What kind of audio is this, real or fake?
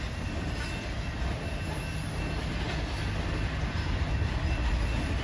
real